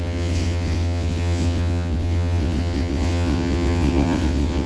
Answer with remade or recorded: remade